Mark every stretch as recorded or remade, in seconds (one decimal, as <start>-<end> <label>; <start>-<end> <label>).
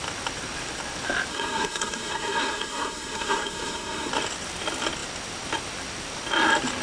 0.0-1.3 recorded; 1.3-4.1 remade; 4.1-6.8 recorded